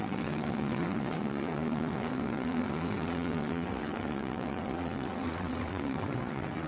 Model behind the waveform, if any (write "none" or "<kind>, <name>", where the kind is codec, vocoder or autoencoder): vocoder, WaveNeXt